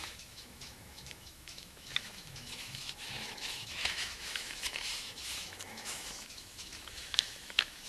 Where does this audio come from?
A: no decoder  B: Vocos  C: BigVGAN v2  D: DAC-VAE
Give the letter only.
D